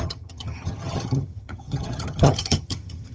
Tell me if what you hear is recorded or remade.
remade